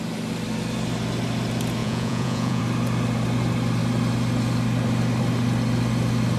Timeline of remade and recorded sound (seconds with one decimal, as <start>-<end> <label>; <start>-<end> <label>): 0.0-1.8 recorded; 1.8-2.6 remade; 2.6-6.4 recorded